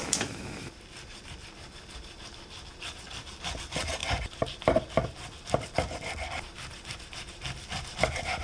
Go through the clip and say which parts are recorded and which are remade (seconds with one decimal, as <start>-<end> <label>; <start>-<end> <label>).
0.0-0.7 remade; 0.7-8.4 recorded